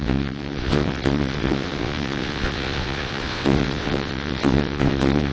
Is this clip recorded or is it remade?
remade